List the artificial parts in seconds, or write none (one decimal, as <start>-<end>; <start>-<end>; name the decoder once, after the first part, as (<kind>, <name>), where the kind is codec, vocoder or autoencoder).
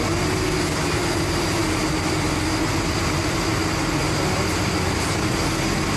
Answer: none